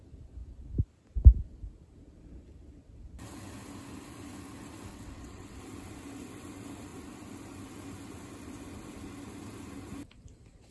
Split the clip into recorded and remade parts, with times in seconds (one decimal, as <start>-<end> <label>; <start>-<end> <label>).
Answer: 0.0-4.9 recorded; 4.9-5.6 remade; 5.6-10.7 recorded